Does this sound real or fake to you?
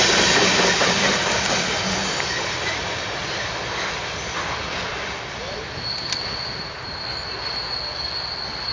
real